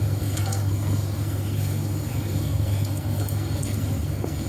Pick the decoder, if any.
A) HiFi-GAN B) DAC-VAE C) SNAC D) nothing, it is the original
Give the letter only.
C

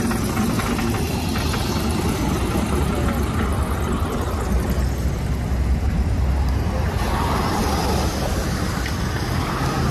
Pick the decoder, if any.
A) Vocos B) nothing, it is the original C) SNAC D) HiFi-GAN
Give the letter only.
B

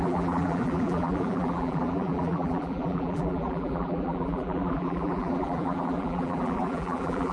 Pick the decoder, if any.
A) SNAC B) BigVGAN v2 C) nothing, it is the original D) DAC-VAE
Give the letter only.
B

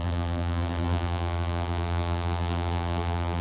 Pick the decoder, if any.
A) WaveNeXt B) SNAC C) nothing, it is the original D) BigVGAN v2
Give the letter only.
D